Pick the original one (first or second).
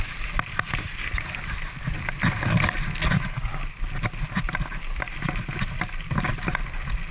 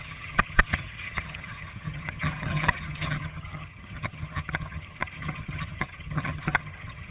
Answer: first